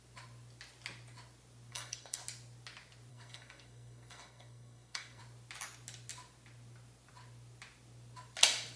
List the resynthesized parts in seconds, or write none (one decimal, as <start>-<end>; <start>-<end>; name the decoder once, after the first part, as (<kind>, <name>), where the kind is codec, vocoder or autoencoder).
1.7-2.2 (codec, SNAC); 3.1-5.2